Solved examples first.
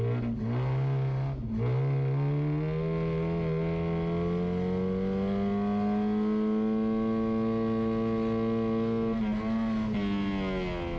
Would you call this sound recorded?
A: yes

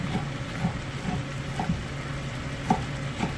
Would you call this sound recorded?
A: yes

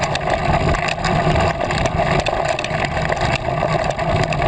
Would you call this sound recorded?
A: yes